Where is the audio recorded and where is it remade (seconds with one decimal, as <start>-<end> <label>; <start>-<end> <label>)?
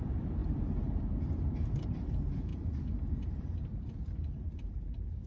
0.0-5.3 remade